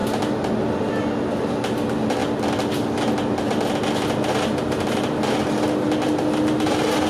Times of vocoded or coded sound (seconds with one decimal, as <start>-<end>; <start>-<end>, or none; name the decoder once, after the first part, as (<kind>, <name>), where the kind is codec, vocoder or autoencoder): none